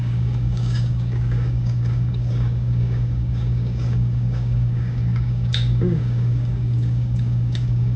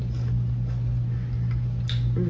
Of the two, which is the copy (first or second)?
first